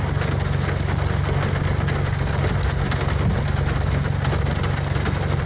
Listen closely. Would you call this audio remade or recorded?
recorded